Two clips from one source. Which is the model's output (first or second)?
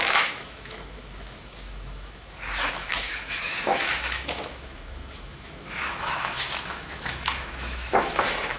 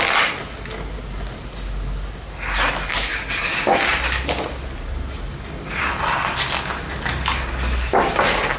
first